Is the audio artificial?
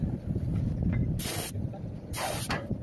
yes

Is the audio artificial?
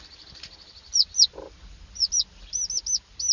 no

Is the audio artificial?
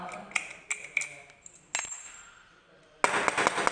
no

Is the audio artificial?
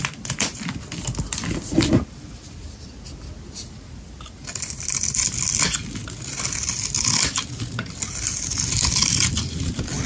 no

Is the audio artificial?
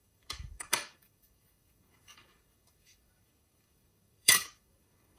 yes